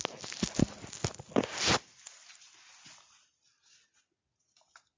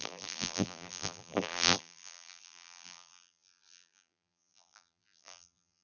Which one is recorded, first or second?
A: first